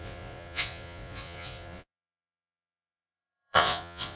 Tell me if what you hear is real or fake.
fake